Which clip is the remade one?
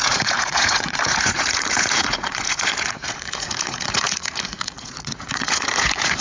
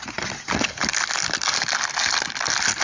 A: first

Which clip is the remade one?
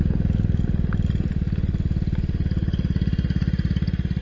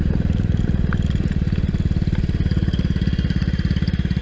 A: second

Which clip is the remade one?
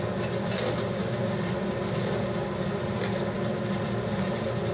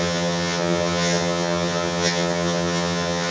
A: second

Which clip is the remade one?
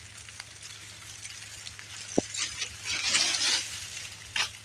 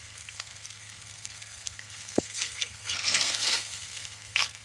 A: second